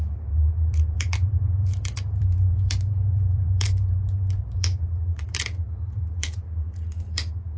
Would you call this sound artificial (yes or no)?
yes